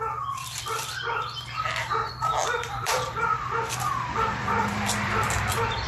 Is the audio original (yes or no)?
no